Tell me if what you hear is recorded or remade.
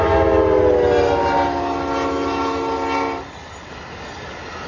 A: recorded